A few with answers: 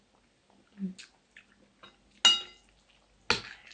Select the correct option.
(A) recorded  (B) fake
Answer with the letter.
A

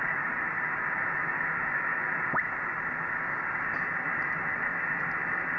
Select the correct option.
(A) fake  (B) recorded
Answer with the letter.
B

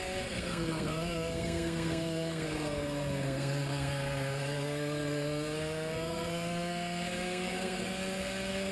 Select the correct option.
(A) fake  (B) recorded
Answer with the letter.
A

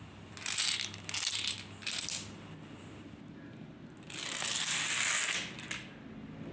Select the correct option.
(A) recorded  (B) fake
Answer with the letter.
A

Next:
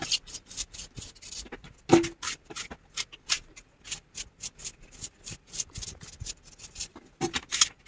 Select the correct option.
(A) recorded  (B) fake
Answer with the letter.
A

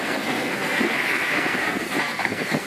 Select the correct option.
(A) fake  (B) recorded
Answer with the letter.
A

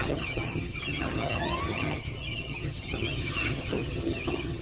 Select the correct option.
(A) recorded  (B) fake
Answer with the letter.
B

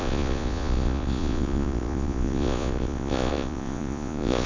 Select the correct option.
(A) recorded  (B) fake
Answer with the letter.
B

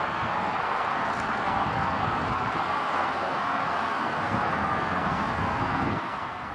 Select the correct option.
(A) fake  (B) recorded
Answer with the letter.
A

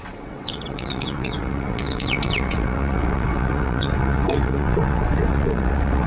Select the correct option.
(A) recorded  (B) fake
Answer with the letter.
B